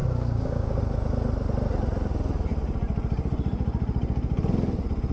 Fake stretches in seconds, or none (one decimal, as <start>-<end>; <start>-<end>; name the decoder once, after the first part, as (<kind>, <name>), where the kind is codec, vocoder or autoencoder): 0.0-0.8 (codec, DAC)